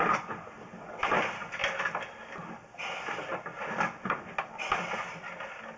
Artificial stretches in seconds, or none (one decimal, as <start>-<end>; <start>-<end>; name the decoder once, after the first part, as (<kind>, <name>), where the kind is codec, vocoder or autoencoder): none